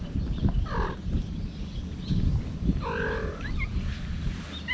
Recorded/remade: recorded